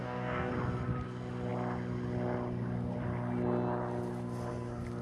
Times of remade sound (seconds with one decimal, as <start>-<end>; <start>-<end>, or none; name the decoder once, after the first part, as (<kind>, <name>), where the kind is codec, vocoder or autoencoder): 0.0-0.5 (codec, DAC)